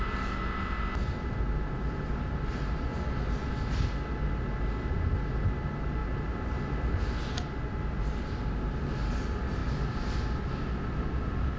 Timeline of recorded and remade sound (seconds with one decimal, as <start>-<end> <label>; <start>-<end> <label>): 0.0-11.6 recorded